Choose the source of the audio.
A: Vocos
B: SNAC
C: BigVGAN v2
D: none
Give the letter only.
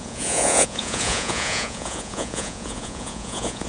A